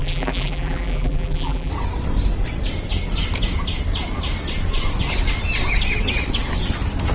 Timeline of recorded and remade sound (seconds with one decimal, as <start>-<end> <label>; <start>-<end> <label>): 0.0-1.7 remade; 1.7-7.1 recorded